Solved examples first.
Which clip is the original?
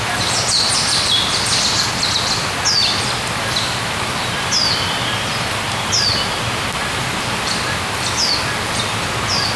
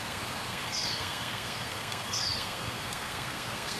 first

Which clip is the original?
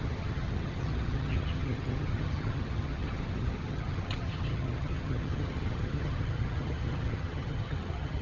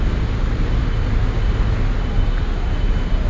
second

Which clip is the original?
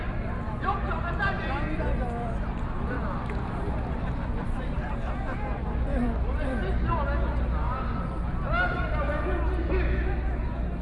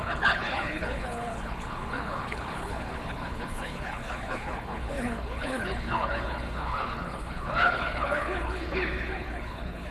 first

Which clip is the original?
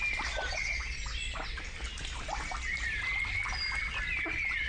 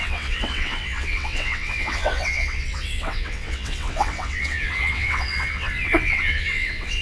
first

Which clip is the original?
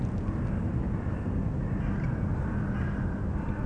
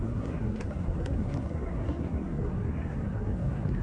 first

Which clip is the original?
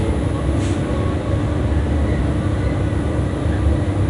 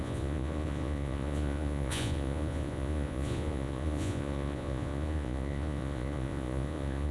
first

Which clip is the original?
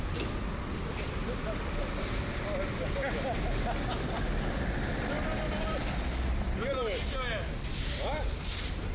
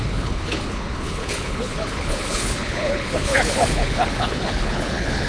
first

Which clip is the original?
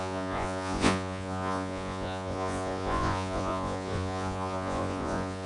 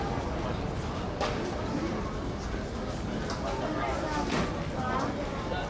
second